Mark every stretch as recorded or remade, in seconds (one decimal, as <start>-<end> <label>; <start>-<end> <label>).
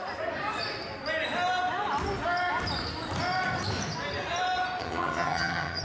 0.0-4.8 recorded; 4.8-5.8 remade